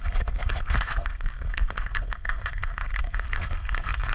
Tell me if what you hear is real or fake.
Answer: fake